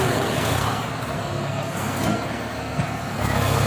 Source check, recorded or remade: remade